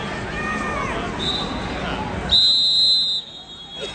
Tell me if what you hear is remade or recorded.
recorded